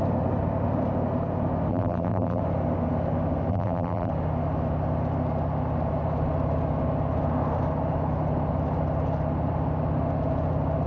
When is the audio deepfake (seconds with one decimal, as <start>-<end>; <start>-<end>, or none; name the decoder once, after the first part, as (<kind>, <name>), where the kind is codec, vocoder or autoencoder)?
1.7-2.4 (vocoder, BigVGAN v2); 3.5-4.1